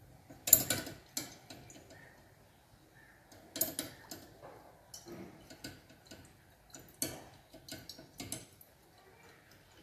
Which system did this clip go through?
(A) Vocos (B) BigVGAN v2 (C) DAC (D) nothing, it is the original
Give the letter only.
D